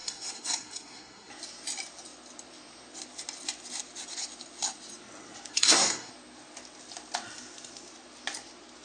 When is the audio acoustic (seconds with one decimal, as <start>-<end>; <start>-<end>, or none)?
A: 1.3-5.5; 6.1-8.8